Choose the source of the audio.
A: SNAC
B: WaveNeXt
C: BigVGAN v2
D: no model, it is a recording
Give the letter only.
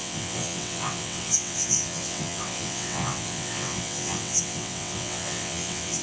B